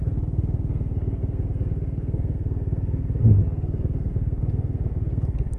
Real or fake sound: fake